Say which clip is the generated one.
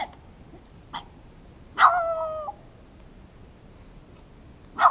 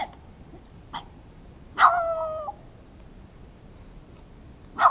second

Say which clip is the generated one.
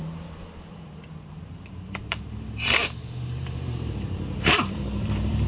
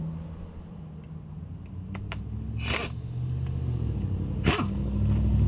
first